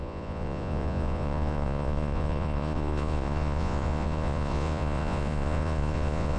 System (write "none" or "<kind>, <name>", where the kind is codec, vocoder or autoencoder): vocoder, Vocos